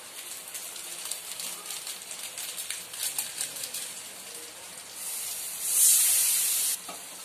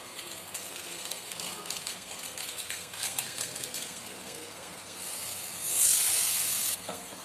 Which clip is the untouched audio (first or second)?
first